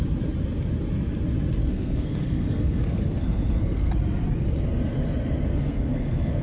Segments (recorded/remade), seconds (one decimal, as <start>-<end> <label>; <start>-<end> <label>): 0.0-1.6 recorded; 1.6-3.9 remade; 3.9-5.5 recorded; 5.5-6.4 remade